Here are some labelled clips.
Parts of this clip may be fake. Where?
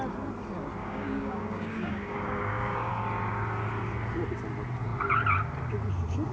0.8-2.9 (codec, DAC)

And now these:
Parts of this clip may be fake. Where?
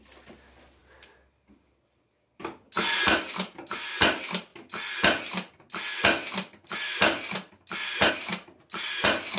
none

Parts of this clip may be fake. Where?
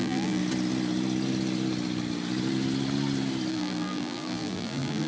0.0-0.4 (vocoder, BigVGAN v2); 3.5-5.1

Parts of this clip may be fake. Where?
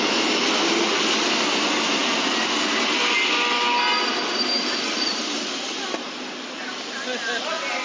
none